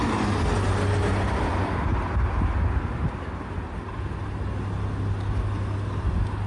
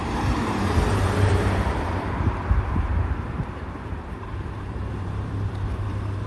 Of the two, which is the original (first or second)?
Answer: first